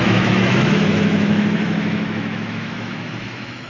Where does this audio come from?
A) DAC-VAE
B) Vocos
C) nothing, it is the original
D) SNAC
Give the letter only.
A